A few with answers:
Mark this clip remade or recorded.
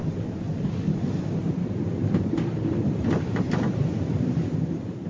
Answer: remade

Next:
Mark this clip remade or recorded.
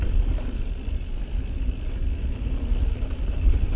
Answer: recorded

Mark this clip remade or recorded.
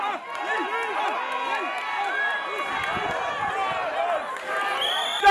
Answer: recorded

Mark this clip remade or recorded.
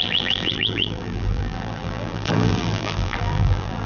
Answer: remade